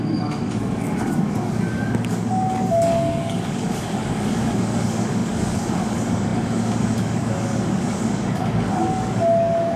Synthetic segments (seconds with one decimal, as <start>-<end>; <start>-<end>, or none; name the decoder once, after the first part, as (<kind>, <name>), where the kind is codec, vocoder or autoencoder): 0.0-9.8 (codec, DAC)